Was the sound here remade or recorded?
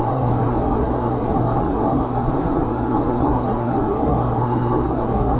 remade